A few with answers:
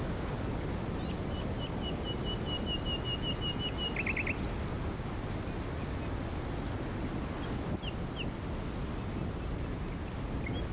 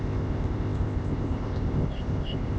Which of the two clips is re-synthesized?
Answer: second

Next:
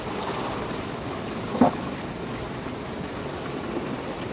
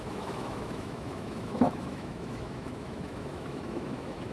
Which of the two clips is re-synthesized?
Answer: second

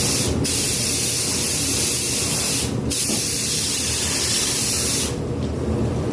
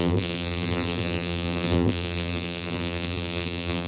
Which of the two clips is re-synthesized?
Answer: second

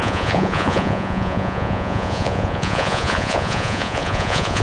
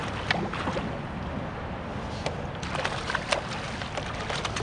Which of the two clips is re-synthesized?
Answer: first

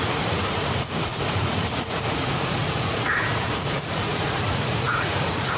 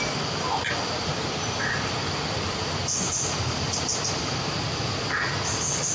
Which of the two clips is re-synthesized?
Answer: first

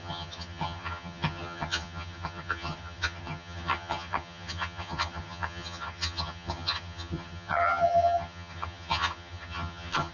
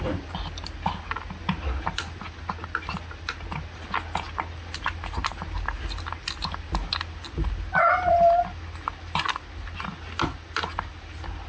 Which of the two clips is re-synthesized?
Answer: first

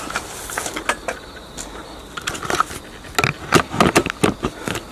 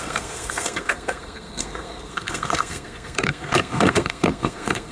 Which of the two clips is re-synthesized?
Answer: second